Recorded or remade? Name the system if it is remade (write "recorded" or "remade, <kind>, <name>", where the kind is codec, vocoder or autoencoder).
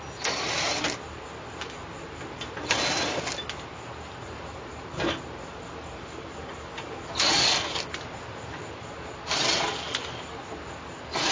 recorded